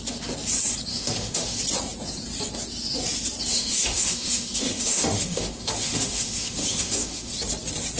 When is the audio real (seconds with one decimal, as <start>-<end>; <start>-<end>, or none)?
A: 0.0-0.9; 1.6-3.5; 7.3-8.0